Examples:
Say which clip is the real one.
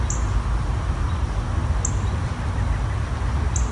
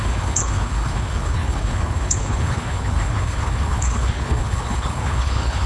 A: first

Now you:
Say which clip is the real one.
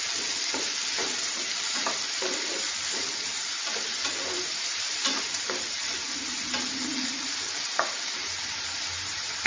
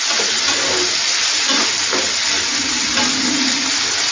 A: second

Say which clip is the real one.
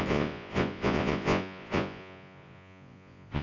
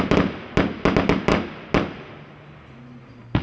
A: second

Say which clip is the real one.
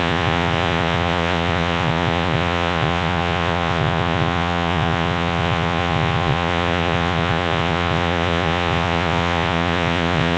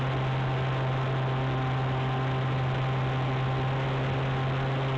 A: second